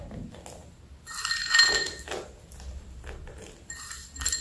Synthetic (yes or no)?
no